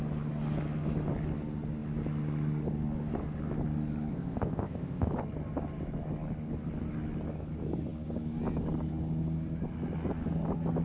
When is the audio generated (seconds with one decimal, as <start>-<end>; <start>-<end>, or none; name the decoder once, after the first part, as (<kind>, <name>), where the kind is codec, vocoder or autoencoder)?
4.1-5.1 (codec, ZipCodec)